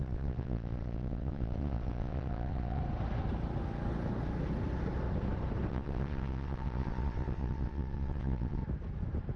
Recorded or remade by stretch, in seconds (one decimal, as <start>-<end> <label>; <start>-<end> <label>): 0.0-2.8 remade; 2.8-5.7 recorded; 5.7-8.6 remade; 8.6-9.4 recorded